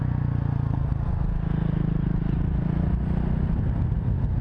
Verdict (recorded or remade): recorded